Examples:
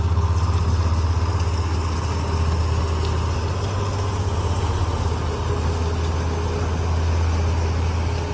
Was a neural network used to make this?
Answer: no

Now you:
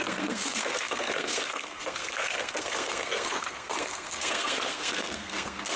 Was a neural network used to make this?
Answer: yes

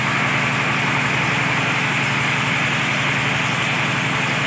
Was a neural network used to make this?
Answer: no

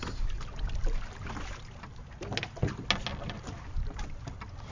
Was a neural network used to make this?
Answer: no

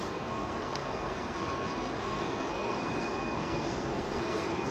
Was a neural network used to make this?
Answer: yes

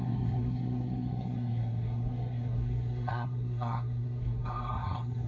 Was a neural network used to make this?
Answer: yes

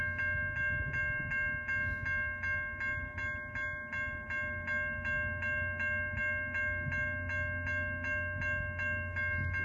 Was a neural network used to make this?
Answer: no